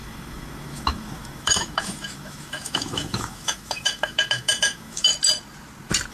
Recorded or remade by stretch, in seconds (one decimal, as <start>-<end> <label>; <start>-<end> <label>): 0.0-5.1 remade; 5.1-6.1 recorded